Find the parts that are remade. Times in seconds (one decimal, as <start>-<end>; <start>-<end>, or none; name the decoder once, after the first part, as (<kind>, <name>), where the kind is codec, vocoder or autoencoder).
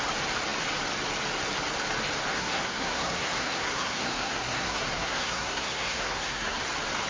2.3-6.6 (codec, SNAC)